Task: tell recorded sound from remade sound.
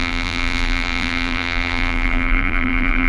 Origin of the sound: remade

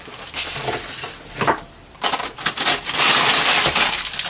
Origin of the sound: recorded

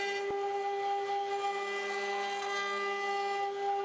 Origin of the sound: recorded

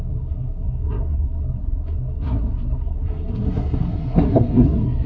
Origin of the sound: remade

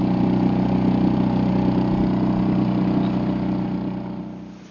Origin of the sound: recorded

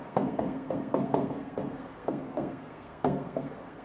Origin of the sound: remade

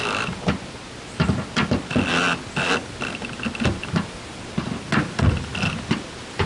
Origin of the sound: recorded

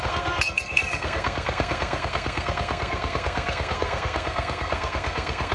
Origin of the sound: remade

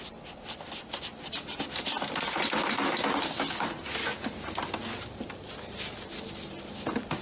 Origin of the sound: recorded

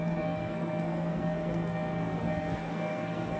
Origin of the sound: remade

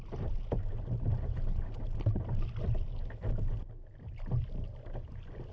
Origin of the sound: recorded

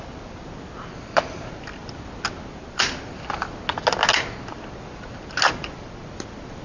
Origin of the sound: recorded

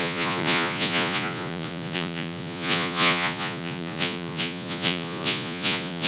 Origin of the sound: remade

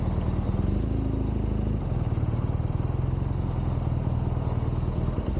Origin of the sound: recorded